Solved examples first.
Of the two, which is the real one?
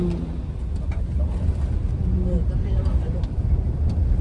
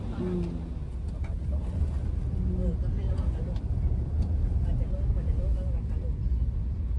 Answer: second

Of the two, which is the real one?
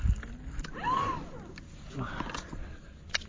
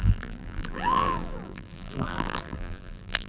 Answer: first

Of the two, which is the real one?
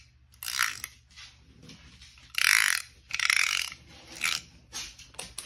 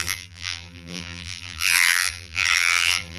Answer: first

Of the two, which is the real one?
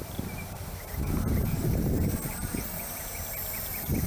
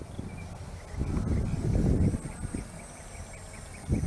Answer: second